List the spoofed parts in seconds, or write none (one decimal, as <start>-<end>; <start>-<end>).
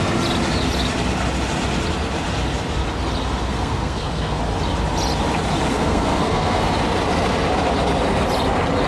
3.5-4.4; 5.7-6.7